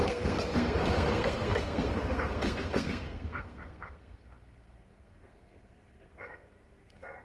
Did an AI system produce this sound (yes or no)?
yes